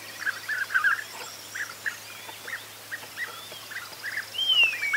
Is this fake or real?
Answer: real